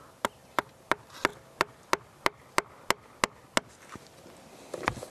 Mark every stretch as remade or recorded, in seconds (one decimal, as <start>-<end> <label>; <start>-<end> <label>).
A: 0.0-5.1 recorded